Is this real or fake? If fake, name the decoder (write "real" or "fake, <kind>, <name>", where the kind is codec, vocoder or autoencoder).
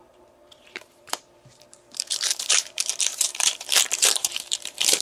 fake, vocoder, BigVGAN v2